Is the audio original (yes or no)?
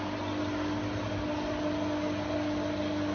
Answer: yes